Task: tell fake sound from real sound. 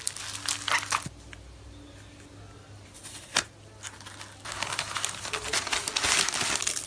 real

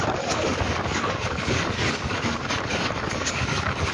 fake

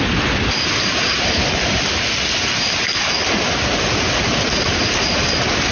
real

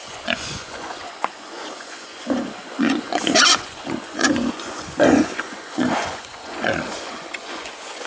fake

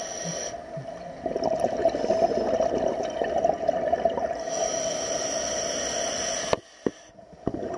real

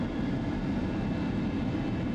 real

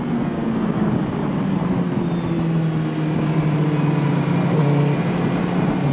real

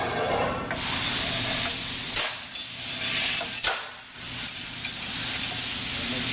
real